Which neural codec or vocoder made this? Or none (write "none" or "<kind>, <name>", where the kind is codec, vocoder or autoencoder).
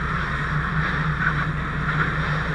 none